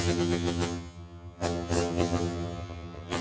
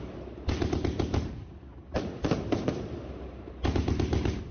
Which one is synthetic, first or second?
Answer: first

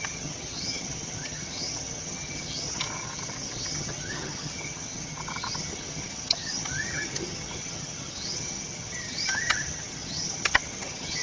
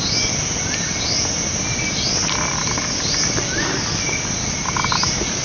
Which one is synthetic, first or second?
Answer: first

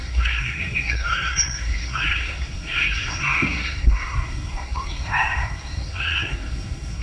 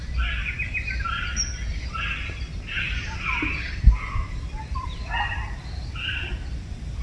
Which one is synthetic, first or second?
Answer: first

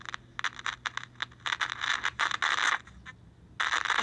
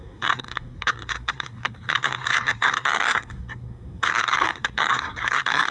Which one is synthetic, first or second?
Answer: second